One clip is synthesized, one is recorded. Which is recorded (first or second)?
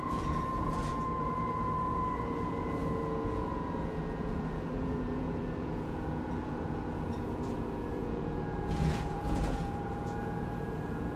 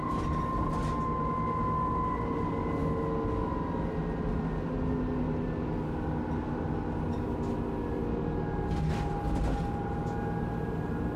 second